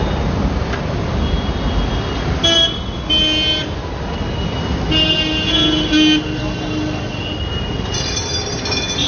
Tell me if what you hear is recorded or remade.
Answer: recorded